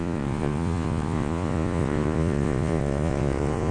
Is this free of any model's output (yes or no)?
no